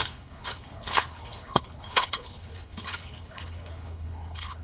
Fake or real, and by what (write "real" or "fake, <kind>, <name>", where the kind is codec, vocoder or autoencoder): fake, codec, HILCodec